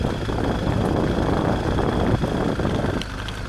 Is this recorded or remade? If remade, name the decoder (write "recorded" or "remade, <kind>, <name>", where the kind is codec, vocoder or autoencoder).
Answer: recorded